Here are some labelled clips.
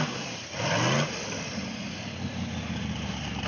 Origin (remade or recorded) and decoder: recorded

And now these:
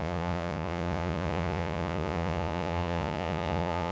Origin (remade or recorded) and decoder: remade, vocoder, Vocos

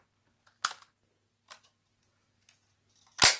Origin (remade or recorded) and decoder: recorded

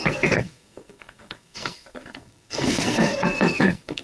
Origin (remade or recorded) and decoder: remade, codec, SNAC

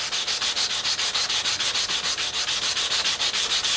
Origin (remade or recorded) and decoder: recorded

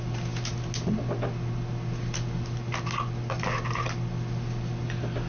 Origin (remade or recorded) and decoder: recorded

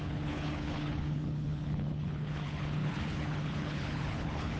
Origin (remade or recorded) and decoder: remade, codec, HILCodec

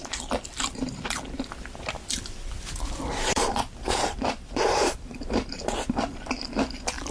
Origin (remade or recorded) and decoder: remade, vocoder, BigVGAN v2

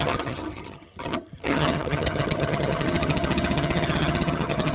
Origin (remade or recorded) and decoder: remade, vocoder, HiFi-GAN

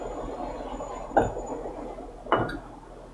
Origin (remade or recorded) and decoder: recorded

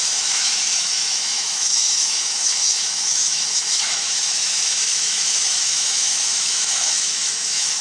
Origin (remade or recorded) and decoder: remade, autoencoder, DAC-VAE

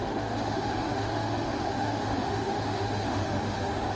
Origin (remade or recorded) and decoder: remade, autoencoder, DAC-VAE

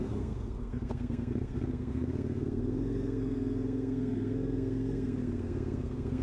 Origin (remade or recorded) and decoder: remade, codec, SNAC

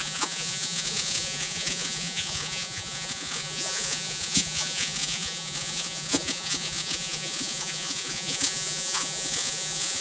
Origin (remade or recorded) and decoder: remade, vocoder, Vocos